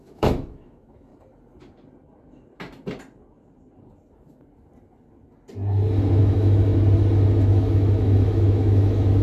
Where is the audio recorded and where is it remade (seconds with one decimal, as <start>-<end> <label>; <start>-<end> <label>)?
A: 0.0-1.1 remade; 1.1-6.2 recorded; 6.2-6.7 remade; 6.7-7.4 recorded; 7.4-9.2 remade

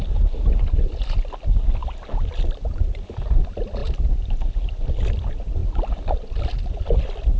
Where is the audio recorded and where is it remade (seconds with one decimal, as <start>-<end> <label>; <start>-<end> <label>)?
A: 0.0-7.4 recorded

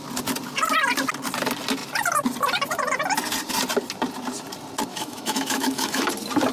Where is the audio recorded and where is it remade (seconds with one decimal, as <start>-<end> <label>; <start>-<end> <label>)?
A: 0.0-4.9 recorded; 4.9-6.1 remade; 6.1-6.5 recorded

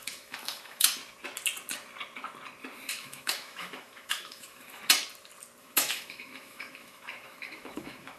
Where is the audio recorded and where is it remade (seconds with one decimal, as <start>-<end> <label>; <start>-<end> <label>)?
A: 0.0-1.0 remade; 1.0-2.9 recorded; 2.9-4.8 remade; 4.8-5.6 recorded; 5.6-8.2 remade

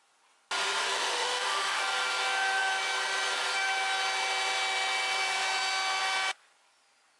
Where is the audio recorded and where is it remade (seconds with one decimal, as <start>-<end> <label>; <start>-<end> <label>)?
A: 0.0-0.9 recorded; 0.9-1.8 remade; 1.8-7.2 recorded